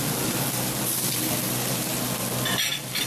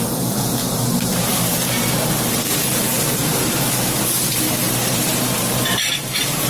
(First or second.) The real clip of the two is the first